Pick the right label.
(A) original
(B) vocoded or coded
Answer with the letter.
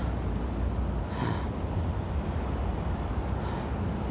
A